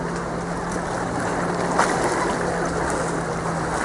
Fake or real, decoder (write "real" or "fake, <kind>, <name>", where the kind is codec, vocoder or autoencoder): real